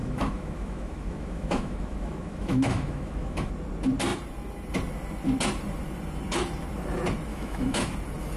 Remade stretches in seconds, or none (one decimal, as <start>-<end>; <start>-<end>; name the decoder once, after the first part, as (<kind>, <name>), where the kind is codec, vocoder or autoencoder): 0.0-3.5 (autoencoder, DAC-VAE); 7.3-7.9